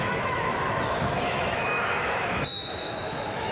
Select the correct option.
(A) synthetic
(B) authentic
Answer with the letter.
A